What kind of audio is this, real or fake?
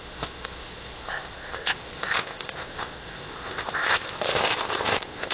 fake